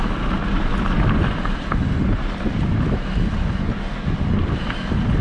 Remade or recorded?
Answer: recorded